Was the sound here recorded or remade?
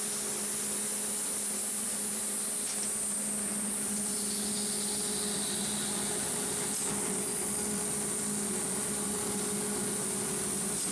recorded